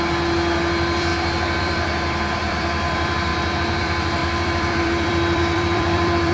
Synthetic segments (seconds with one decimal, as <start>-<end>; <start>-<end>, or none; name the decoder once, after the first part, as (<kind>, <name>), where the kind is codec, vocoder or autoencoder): 0.0-1.1 (vocoder, BigVGAN v2); 1.6-3.3; 3.8-6.3